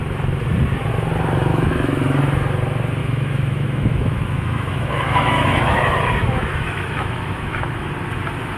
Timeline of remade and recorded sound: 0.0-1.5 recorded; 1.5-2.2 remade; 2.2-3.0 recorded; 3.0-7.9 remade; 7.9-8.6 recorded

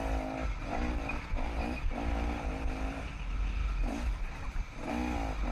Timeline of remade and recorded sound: 0.0-5.5 recorded

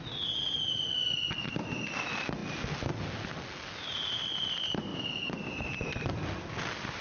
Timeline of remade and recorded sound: 0.0-4.9 recorded; 4.9-7.0 remade

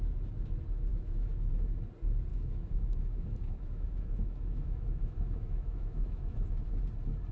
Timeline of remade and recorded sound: 0.0-0.9 recorded; 0.9-1.5 remade; 1.5-2.3 recorded; 2.3-6.7 remade; 6.7-7.3 recorded